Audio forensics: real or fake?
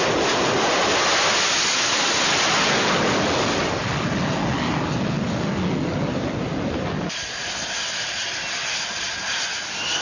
real